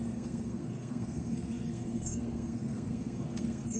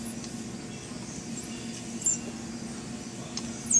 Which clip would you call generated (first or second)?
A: first